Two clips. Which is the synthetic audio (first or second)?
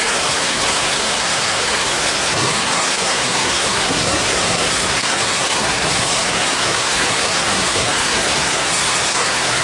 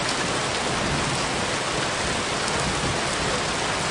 first